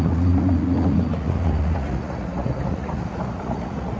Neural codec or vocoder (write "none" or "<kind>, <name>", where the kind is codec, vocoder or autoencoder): vocoder, Vocos